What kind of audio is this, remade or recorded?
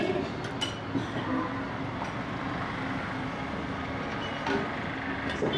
recorded